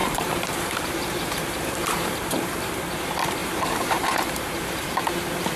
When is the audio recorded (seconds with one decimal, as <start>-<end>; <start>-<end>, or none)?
2.8-3.4; 5.0-5.6